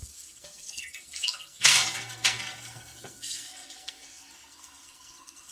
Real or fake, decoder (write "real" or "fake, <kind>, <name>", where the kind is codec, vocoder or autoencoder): fake, codec, SNAC